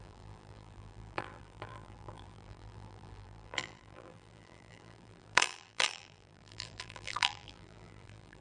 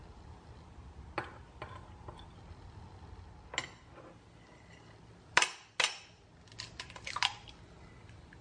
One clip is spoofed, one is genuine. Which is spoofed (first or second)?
first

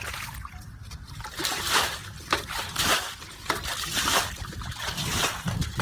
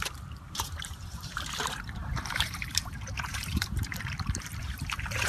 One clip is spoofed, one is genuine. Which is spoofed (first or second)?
second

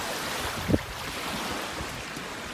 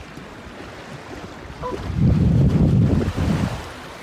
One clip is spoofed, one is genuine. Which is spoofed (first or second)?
second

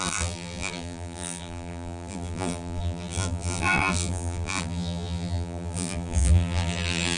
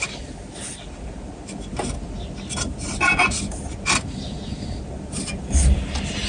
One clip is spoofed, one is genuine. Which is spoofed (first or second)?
first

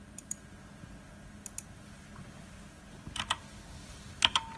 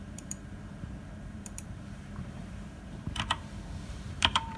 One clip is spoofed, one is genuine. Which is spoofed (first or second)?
second